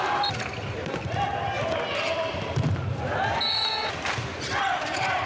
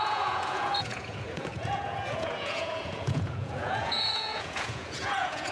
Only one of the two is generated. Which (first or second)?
second